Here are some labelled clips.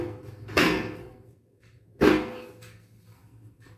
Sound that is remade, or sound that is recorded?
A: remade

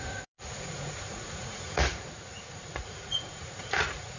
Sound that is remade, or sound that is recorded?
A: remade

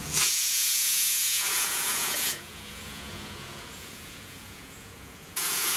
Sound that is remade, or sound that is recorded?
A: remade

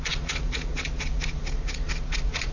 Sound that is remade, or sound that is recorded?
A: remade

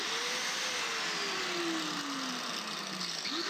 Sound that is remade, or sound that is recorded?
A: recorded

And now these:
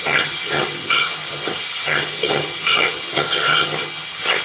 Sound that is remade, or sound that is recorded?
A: remade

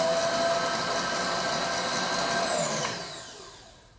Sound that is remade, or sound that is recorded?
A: recorded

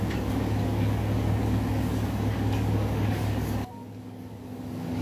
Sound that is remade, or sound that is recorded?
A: remade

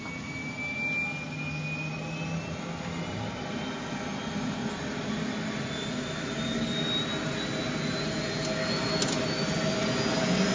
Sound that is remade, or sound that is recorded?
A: recorded